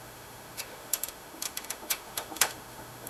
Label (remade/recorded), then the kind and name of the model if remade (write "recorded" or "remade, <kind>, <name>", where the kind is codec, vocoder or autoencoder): remade, autoencoder, DAC-VAE